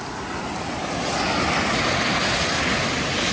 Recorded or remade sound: recorded